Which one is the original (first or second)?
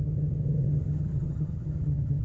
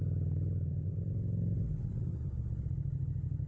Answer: second